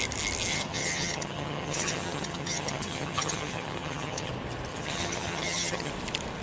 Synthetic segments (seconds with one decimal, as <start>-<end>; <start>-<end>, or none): 0.5-4.3; 4.7-5.9